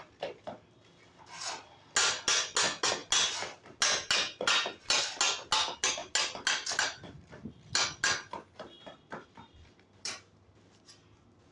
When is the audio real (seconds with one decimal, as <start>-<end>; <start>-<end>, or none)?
0.0-11.5